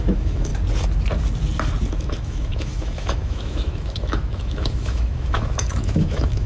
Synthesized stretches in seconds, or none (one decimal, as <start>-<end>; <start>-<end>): 0.0-0.5; 1.9-6.5

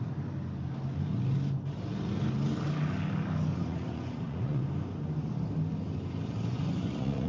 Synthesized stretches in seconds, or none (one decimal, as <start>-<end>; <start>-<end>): 3.5-4.6; 6.5-7.3

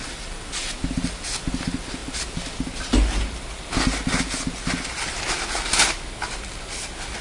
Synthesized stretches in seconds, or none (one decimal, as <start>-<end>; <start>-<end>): none

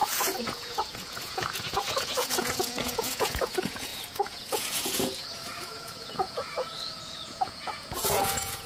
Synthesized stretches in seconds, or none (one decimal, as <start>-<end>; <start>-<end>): 0.0-8.7

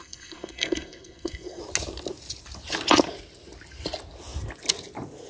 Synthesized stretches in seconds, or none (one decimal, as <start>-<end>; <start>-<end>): 0.0-1.6

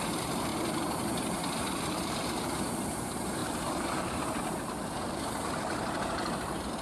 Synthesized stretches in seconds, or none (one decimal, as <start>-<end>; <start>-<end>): 0.0-0.5; 1.6-6.8

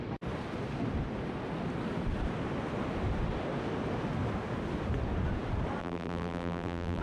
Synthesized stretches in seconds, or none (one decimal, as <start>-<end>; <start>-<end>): 5.8-7.0

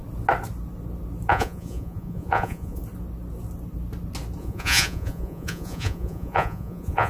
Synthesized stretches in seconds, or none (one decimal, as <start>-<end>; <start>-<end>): 1.3-2.8; 4.4-7.1